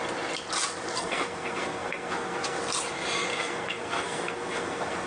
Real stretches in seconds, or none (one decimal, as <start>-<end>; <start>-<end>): 0.0-0.9; 2.6-3.3